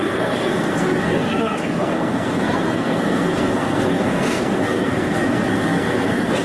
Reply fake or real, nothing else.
fake